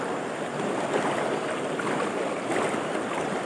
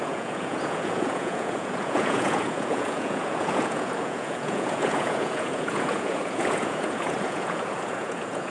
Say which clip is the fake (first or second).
second